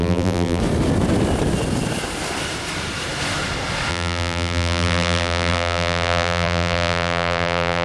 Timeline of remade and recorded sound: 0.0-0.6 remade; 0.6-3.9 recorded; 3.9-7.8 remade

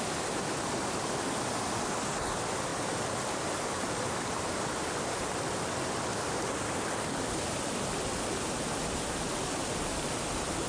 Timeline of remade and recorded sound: 0.0-2.7 recorded; 2.7-5.2 remade; 5.2-6.1 recorded; 6.1-8.2 remade; 8.2-10.7 recorded

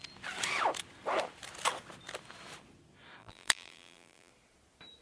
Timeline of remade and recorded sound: 0.0-3.2 recorded; 3.2-4.3 remade; 4.3-5.0 recorded

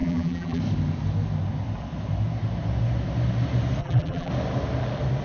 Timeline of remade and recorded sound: 0.0-0.6 remade; 0.6-3.8 recorded; 3.8-4.3 remade; 4.3-5.2 recorded

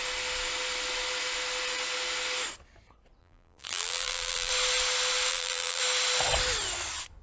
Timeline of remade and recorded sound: 0.0-3.2 recorded; 3.2-4.5 remade; 4.5-5.3 recorded; 5.3-5.8 remade; 5.8-7.2 recorded